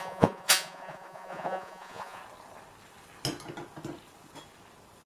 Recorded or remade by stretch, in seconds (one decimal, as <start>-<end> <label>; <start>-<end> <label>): 0.0-2.2 remade; 2.2-5.1 recorded